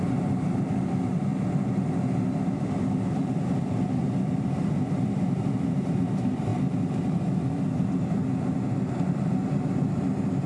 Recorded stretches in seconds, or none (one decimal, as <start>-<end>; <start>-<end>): 1.3-2.6; 6.5-8.9